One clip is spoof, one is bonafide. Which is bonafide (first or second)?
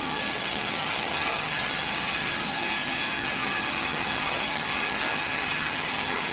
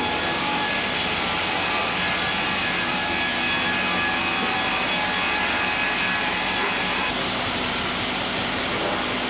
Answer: second